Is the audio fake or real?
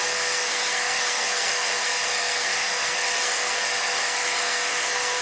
fake